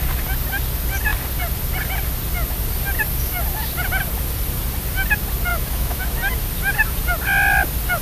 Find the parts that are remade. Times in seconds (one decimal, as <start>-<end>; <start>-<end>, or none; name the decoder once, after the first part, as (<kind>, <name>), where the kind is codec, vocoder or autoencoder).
5.5-6.0 (autoencoder, DAC-VAE)